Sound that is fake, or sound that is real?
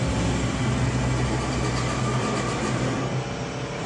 real